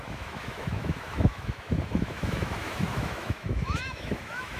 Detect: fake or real fake